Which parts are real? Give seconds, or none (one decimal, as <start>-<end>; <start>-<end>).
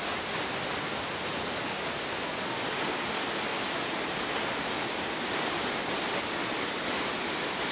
0.0-7.7